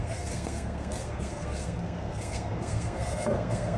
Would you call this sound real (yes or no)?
no